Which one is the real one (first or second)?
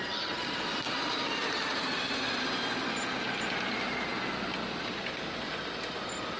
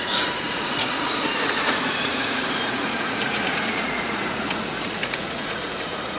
first